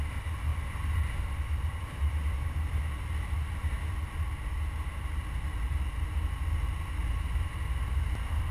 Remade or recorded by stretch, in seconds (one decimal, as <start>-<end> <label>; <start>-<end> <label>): 0.0-2.2 remade; 2.2-6.4 recorded; 6.4-8.5 remade